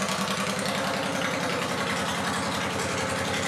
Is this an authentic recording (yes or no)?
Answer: yes